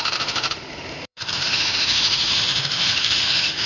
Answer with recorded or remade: remade